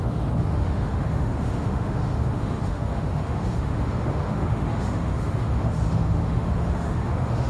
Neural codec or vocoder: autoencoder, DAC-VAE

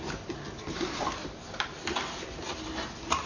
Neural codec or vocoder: none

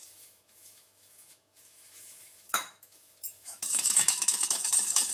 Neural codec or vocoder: autoencoder, DAC-VAE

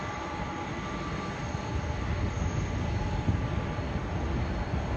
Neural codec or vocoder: none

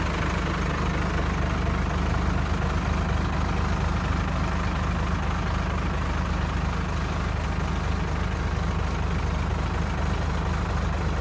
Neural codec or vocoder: none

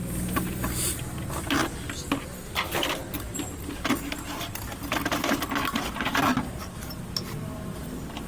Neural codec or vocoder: none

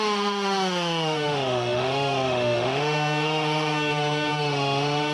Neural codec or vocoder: autoencoder, DAC-VAE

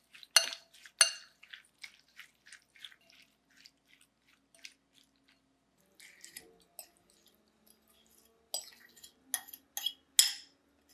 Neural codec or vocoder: none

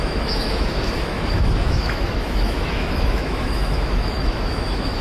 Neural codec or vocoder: autoencoder, DAC-VAE